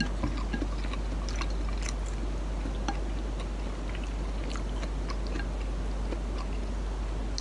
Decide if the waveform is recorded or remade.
recorded